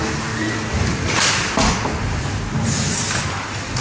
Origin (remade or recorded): recorded